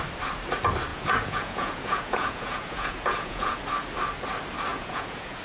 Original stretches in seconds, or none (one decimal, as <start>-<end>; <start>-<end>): 0.0-0.9; 3.6-4.7